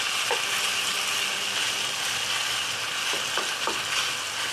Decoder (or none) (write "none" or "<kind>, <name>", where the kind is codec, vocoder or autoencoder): none